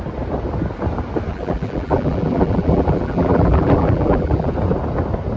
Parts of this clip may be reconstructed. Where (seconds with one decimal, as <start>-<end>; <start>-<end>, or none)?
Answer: 1.3-4.5